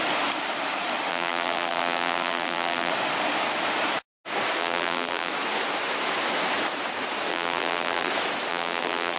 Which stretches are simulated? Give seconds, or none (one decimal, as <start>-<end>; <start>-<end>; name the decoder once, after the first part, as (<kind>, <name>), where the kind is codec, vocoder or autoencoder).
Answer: 1.1-2.9 (vocoder, BigVGAN v2); 4.6-5.3; 7.3-8.1; 8.5-9.2